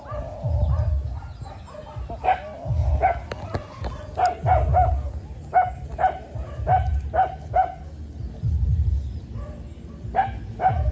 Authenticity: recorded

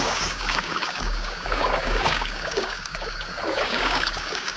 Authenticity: remade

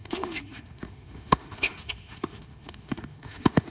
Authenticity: remade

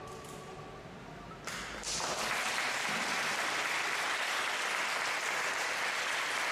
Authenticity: recorded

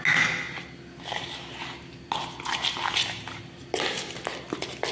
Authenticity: recorded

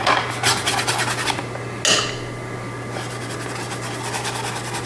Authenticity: recorded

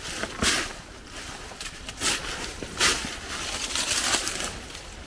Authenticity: recorded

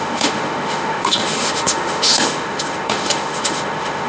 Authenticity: remade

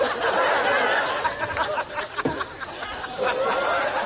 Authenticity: remade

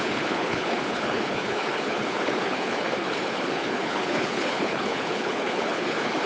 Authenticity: remade